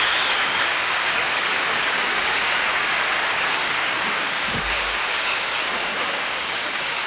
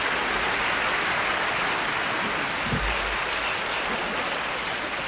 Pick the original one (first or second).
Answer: second